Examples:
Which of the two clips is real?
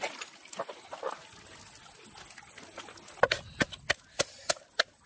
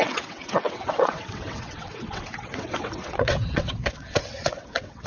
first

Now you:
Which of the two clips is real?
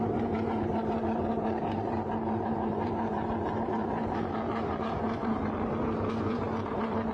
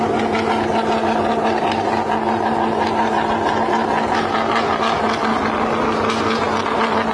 second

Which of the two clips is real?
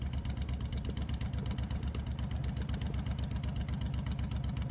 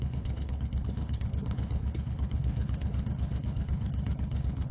first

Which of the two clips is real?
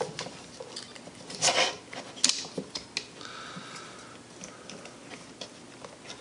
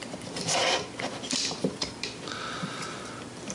first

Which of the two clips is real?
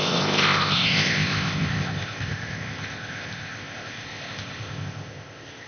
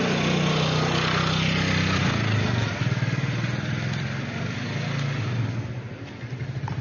second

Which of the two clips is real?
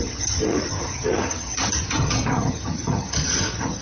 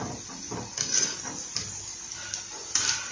second